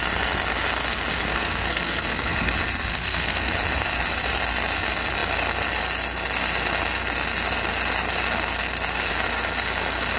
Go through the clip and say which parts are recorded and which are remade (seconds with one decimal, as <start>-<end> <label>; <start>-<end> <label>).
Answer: 0.0-1.3 recorded; 1.3-2.5 remade; 2.5-2.9 recorded; 2.9-3.5 remade; 3.5-10.2 recorded